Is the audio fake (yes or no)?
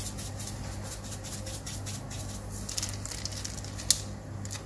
no